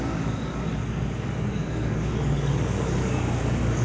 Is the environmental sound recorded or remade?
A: remade